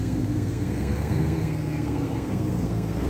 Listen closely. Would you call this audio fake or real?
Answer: fake